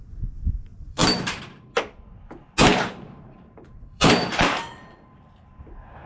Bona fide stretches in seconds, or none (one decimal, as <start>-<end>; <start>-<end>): 0.0-0.7; 1.4-2.7; 5.3-6.1